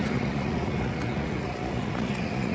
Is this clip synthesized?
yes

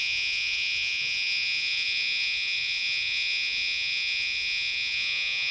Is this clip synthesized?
yes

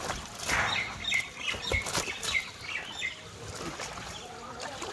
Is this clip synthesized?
no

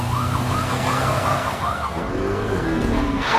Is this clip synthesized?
yes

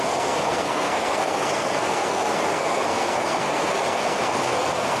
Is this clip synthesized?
yes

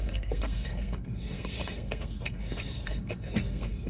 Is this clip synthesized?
yes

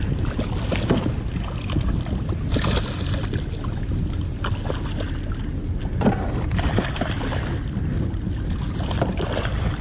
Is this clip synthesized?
no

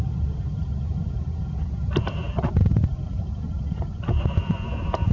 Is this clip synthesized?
yes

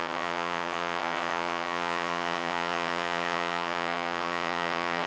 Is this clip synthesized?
yes